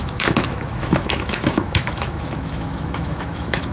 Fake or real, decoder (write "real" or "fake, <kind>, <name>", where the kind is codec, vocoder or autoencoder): fake, autoencoder, DAC-VAE